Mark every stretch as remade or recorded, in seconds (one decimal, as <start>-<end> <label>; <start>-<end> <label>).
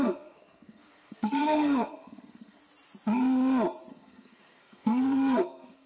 0.0-2.6 remade; 2.6-3.9 recorded; 3.9-5.9 remade